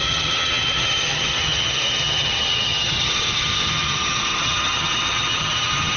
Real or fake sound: fake